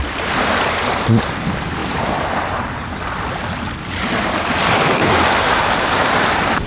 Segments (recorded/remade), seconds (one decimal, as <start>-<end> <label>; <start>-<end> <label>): 0.0-6.7 recorded